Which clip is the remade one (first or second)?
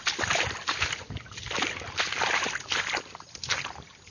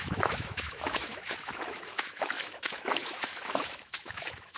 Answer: second